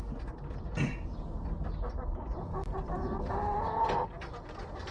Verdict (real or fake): real